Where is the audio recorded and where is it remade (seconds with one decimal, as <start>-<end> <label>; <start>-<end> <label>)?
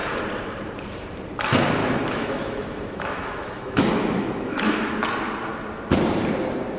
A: 0.0-1.8 recorded; 1.8-4.9 remade; 4.9-6.8 recorded